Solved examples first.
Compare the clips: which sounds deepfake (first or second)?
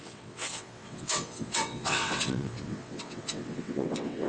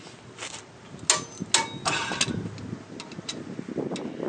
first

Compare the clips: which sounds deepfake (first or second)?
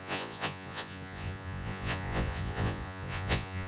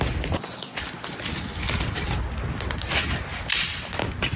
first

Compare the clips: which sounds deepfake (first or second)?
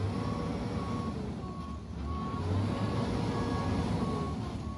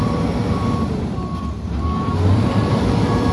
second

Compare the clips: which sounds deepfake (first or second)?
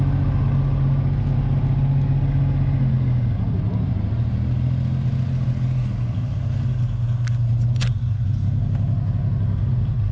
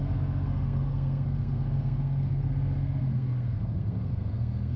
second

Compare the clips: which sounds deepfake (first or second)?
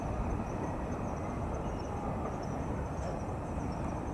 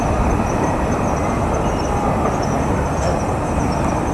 first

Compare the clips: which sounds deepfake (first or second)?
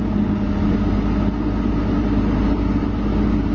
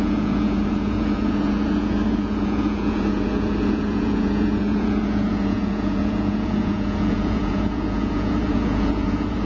second